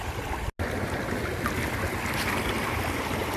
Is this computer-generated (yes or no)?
no